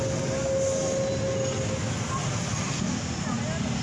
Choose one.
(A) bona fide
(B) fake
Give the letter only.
A